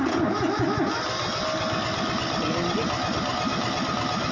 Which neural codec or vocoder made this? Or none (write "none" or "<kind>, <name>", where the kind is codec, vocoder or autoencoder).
none